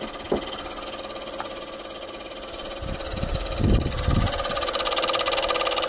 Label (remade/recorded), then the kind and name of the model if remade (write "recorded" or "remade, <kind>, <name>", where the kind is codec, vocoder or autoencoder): recorded